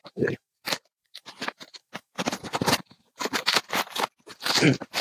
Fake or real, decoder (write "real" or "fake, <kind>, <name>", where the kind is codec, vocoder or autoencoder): fake, vocoder, BigVGAN v2